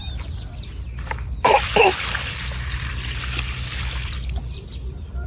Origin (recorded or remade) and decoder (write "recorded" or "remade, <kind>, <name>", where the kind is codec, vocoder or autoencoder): remade, vocoder, BigVGAN v2